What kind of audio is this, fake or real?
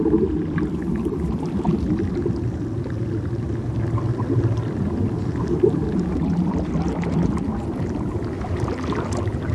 real